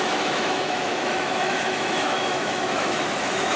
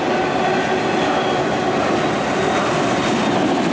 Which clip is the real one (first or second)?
second